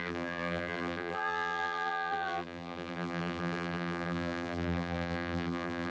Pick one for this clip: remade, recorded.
remade